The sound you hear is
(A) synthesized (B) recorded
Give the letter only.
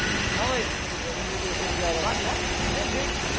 B